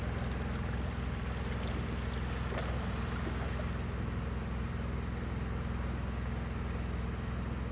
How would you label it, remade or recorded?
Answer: recorded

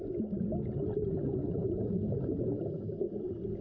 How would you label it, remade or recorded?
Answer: recorded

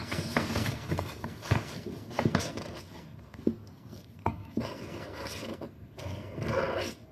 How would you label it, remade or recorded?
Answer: remade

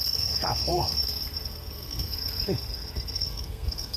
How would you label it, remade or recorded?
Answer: remade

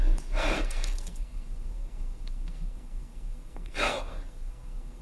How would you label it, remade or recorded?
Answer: remade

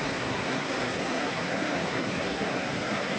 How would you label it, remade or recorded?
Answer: remade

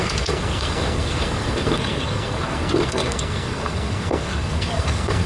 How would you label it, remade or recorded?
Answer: remade